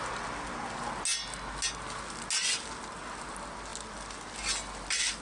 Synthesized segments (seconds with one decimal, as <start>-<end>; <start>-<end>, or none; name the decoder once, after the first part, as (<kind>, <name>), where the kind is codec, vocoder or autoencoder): none